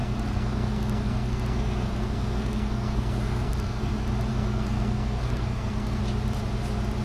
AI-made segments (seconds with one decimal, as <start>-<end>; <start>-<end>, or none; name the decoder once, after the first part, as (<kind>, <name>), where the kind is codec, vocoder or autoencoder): 0.0-3.9 (codec, SNAC); 4.3-6.0